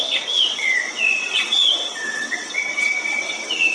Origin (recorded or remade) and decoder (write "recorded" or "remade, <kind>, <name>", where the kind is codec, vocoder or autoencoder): remade, vocoder, WaveNeXt